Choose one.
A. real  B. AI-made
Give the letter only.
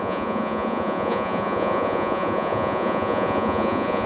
B